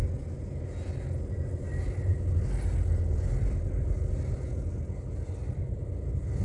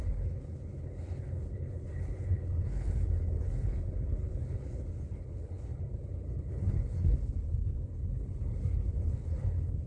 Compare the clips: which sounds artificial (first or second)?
second